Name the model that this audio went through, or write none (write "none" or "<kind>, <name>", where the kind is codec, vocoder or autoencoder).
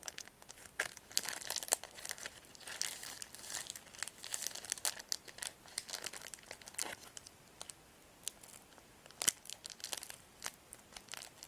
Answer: none